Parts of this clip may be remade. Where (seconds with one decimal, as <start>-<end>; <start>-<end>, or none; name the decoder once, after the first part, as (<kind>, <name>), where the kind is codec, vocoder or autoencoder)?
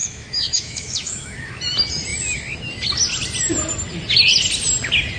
0.0-1.6 (autoencoder, DAC-VAE)